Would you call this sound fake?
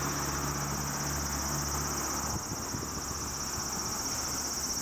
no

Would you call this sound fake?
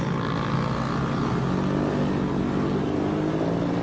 no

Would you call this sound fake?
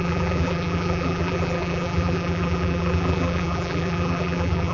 yes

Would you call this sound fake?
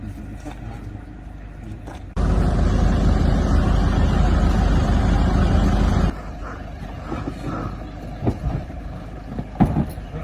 no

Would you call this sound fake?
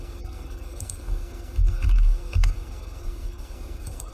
yes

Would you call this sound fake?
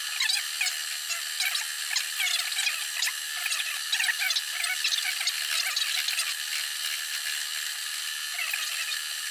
no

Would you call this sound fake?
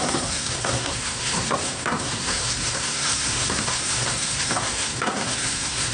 yes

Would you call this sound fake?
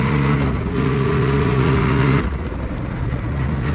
yes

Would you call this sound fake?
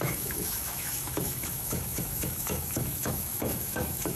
yes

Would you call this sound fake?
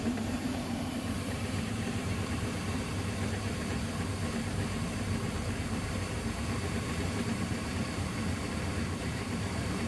yes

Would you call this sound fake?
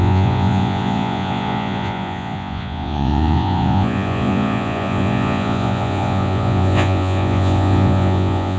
yes